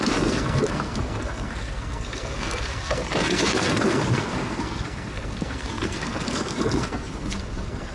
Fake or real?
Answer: fake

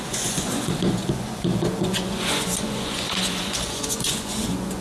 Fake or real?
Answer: fake